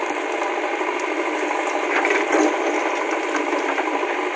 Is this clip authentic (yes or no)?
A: yes